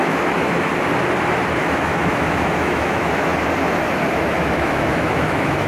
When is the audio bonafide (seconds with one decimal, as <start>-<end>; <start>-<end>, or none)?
0.7-1.6; 3.3-4.1